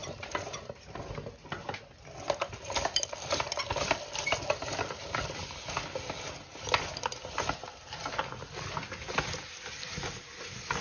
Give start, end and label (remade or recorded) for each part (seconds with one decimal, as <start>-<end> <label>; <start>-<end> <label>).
0.0-10.8 recorded